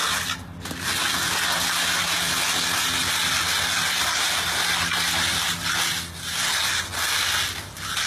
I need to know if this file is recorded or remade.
recorded